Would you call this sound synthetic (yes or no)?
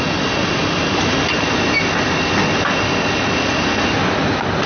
no